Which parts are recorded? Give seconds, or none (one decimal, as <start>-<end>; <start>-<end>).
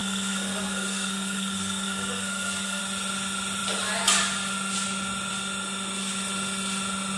2.8-7.2